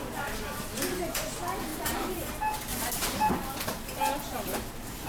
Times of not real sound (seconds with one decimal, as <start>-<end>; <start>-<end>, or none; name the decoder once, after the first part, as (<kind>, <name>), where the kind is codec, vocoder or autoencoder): 1.7-2.3 (vocoder, BigVGAN v2); 2.7-3.3